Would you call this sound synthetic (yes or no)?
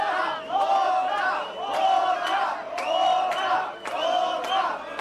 yes